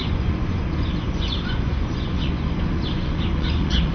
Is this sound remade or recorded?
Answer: remade